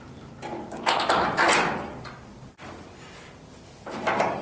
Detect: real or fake real